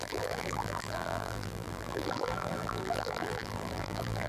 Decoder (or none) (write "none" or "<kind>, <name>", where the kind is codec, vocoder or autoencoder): vocoder, BigVGAN v2